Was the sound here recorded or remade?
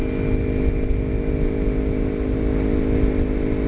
recorded